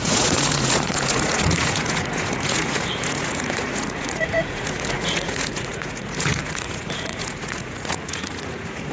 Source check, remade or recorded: remade